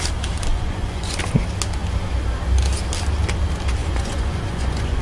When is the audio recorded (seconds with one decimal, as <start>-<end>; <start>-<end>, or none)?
0.0-0.5; 1.2-3.8